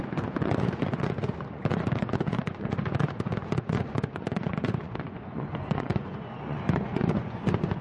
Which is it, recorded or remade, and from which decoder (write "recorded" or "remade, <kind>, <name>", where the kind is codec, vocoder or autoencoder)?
remade, vocoder, Vocos